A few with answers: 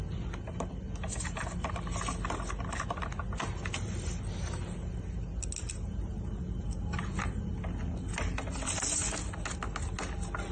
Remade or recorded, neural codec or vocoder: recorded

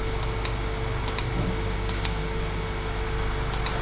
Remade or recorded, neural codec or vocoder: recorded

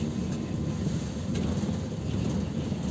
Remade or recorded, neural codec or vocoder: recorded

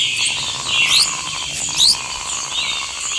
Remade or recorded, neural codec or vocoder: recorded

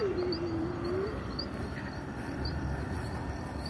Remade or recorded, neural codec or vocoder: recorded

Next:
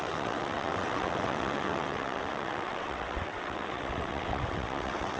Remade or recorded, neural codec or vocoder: remade, vocoder, WaveNeXt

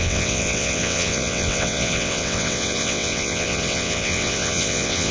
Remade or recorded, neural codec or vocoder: remade, vocoder, WaveNeXt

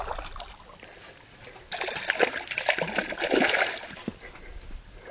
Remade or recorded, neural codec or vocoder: recorded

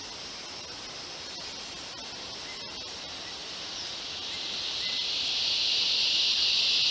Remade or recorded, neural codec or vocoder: recorded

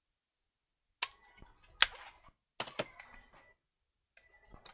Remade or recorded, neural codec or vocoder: recorded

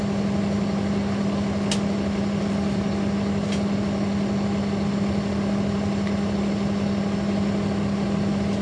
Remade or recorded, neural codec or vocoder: recorded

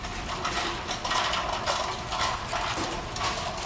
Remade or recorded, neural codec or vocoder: recorded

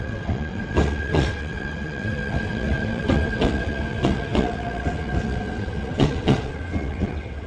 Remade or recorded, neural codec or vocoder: remade, vocoder, WaveNeXt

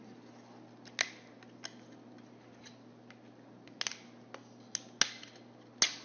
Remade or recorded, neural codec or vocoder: recorded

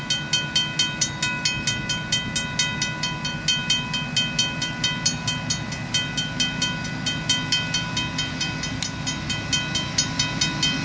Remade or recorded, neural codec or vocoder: recorded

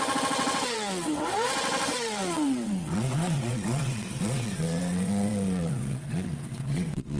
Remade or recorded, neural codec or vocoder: remade, vocoder, WaveNeXt